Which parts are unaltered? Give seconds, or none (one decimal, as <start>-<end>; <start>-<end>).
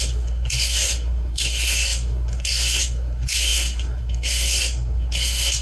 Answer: none